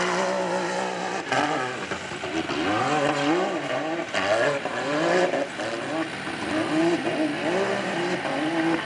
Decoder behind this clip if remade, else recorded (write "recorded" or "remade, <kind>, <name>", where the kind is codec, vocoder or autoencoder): recorded